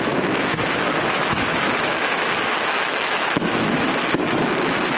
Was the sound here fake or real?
fake